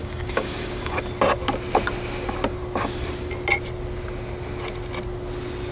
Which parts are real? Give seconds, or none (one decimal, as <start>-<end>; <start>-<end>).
1.0-5.7